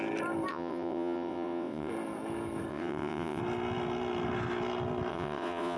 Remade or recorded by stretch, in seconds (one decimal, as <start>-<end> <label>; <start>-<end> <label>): 0.0-0.5 recorded; 0.5-1.9 remade; 1.9-2.7 recorded; 2.7-3.4 remade; 3.4-5.1 recorded; 5.1-5.8 remade